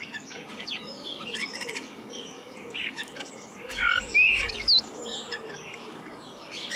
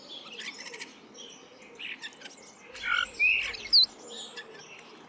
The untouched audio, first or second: second